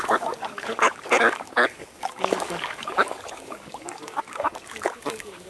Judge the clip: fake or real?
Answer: fake